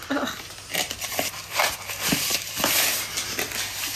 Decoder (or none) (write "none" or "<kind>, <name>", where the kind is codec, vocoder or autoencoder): none